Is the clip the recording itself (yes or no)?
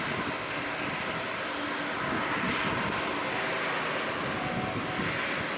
yes